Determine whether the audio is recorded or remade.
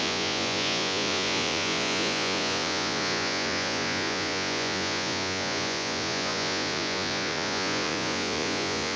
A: remade